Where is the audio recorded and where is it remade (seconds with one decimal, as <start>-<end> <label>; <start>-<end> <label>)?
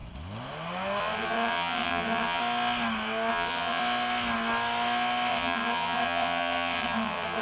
0.0-1.0 recorded; 1.0-2.4 remade; 2.4-3.3 recorded; 3.3-3.8 remade; 3.8-5.3 recorded; 5.3-7.4 remade